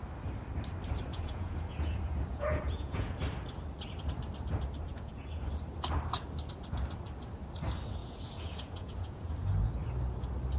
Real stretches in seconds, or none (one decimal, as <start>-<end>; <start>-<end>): 0.0-1.1; 3.2-4.9; 5.5-8.0; 9.3-10.6